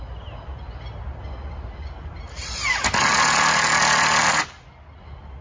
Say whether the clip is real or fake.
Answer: real